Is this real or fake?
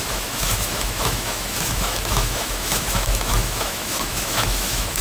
fake